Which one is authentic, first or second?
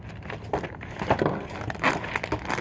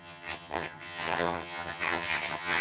first